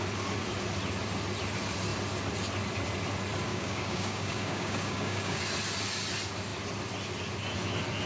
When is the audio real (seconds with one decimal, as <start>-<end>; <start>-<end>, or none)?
0.0-3.5; 5.4-8.1